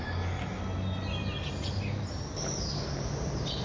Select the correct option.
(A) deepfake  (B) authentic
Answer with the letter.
B